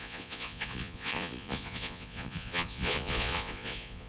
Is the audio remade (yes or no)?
yes